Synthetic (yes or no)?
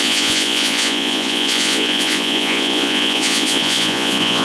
yes